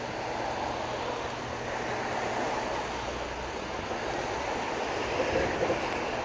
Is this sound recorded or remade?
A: recorded